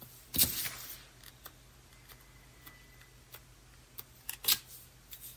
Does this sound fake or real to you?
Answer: real